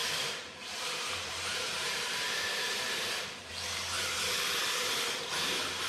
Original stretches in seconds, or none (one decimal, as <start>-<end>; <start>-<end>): 3.5-5.9